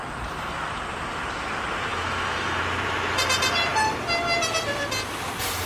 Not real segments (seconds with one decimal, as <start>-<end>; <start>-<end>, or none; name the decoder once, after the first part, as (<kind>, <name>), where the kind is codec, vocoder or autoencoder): 1.9-2.6 (autoencoder, DAC-VAE)

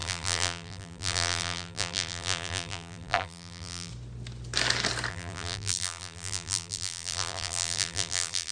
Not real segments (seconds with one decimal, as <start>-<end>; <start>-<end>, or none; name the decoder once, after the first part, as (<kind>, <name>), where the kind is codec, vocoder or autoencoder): 0.0-3.9 (vocoder, BigVGAN v2); 5.1-8.5

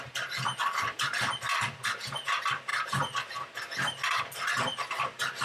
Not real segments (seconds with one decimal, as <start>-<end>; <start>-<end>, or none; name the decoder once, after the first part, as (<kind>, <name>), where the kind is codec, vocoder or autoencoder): none

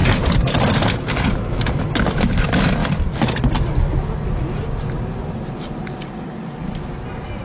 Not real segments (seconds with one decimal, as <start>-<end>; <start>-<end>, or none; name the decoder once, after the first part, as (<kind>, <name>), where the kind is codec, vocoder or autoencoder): 0.0-1.7 (vocoder, BigVGAN v2)

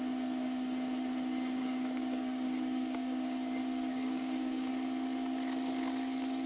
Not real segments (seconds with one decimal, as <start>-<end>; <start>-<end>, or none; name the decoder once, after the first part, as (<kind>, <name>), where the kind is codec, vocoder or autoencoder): 1.6-4.7 (codec, DAC)

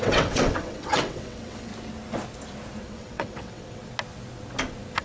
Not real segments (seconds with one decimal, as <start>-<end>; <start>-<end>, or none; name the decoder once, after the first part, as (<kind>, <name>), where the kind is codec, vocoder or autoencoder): 0.0-1.7 (vocoder, WaveNeXt); 2.8-3.8

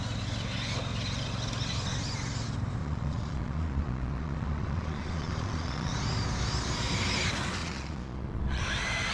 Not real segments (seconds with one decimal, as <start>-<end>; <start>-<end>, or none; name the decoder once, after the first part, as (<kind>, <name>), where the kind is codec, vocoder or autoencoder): 2.8-5.9 (vocoder, Vocos); 7.6-8.6